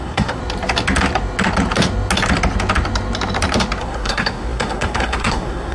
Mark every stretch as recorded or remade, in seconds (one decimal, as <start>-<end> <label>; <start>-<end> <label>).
0.0-0.4 remade; 0.4-3.8 recorded; 3.8-5.7 remade